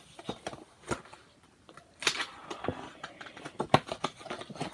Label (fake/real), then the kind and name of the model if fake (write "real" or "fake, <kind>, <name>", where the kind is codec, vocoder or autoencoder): real